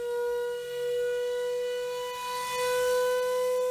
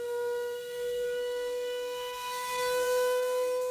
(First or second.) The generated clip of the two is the second